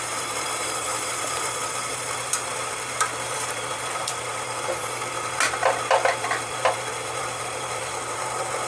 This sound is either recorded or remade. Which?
remade